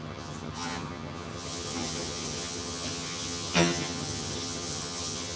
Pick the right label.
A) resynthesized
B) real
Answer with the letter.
A